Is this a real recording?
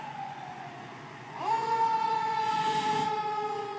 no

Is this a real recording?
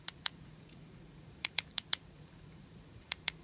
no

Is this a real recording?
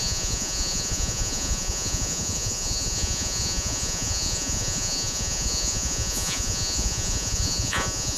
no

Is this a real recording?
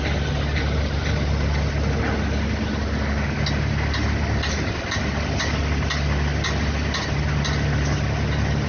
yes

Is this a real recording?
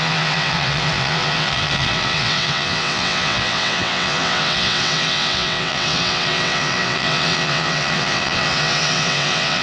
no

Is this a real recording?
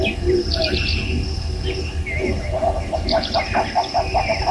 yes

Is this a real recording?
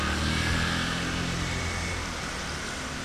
yes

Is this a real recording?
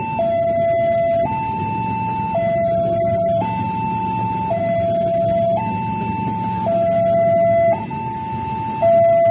yes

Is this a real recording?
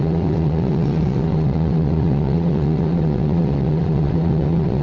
no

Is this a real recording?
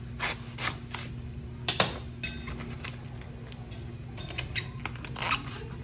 yes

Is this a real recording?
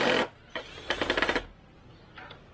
yes